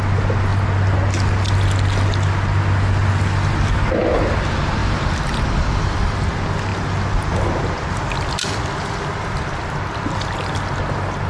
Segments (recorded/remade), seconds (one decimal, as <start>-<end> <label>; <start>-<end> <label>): 0.0-4.8 recorded; 4.8-6.3 remade; 6.3-11.3 recorded